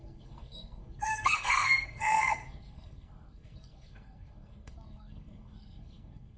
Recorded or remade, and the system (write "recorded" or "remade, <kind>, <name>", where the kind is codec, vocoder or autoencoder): remade, codec, SNAC